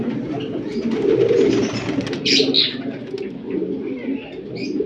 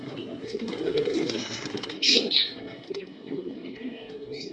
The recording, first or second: first